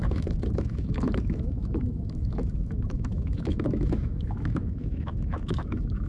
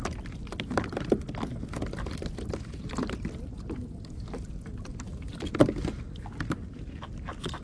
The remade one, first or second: first